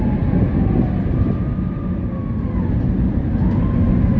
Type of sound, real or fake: real